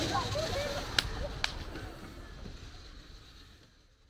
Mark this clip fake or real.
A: real